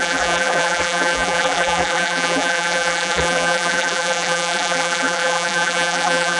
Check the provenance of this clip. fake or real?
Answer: fake